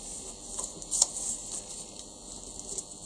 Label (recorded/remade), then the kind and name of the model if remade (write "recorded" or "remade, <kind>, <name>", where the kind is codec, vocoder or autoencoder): recorded